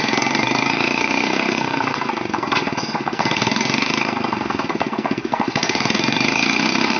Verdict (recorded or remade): remade